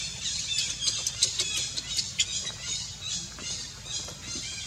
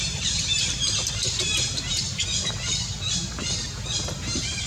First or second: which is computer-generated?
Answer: second